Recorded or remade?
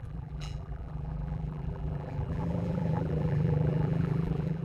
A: remade